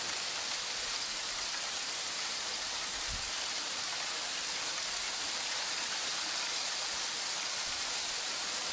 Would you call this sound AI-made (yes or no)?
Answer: no